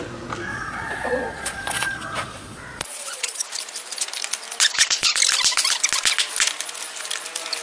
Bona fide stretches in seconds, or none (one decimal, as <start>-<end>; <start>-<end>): 0.0-0.5; 3.5-4.7; 5.2-7.6